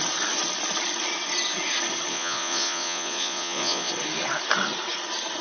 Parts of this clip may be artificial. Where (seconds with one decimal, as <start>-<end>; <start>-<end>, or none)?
2.1-3.9